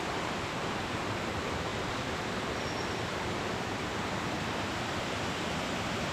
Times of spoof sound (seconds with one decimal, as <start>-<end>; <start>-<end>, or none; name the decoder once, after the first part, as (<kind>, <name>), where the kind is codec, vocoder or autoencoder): 0.0-6.1 (vocoder, BigVGAN v2)

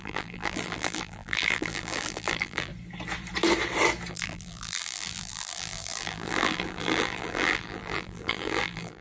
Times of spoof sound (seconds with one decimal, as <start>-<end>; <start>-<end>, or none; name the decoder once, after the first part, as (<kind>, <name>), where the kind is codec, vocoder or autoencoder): 0.0-2.7 (vocoder, BigVGAN v2); 4.1-9.0